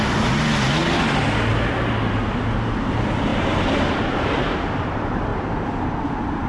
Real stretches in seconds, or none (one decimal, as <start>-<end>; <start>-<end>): 0.0-3.3; 4.6-5.3; 6.1-6.5